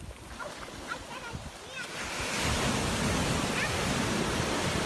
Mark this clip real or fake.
real